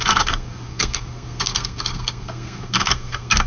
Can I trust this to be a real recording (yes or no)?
no